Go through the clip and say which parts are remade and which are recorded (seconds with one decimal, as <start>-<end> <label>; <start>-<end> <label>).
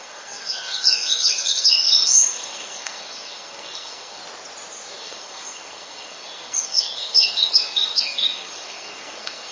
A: 0.0-4.2 remade; 4.2-5.0 recorded; 5.0-9.5 remade